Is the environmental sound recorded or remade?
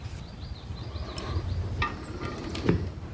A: recorded